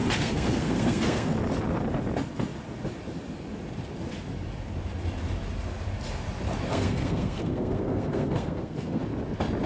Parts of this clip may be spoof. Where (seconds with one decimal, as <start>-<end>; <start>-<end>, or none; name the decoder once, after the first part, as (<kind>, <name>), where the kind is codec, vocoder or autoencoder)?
0.0-1.3 (codec, SNAC); 6.7-9.0